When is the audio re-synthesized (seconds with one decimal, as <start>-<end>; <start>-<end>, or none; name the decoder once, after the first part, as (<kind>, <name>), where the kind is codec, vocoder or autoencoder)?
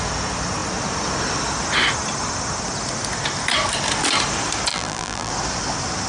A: 4.7-5.3 (vocoder, BigVGAN v2)